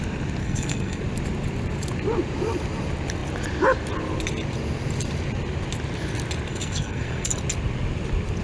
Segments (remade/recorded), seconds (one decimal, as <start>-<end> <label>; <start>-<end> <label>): 0.0-0.4 recorded; 0.4-1.0 remade; 1.0-6.5 recorded; 6.5-7.3 remade; 7.3-8.4 recorded